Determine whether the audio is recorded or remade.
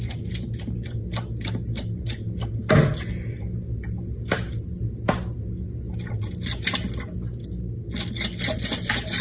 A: recorded